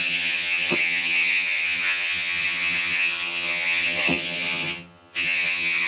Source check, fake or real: fake